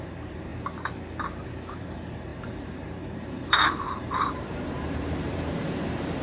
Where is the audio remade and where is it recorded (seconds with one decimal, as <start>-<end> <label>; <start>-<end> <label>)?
0.0-0.5 remade; 0.5-1.7 recorded; 1.7-6.2 remade